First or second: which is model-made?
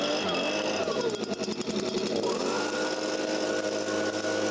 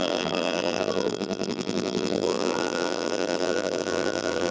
second